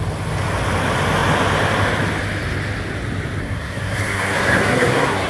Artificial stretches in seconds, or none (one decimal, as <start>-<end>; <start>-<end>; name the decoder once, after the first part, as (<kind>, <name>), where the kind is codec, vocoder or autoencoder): 3.4-5.3 (codec, SNAC)